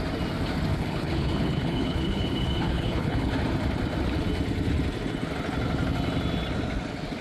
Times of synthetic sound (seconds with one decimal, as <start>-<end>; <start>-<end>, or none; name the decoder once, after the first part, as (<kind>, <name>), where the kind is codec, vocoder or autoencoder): 0.7-3.3 (codec, HILCodec)